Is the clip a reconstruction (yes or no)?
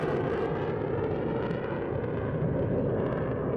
no